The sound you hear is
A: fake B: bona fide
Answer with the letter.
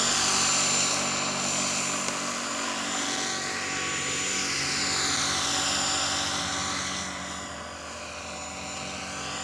B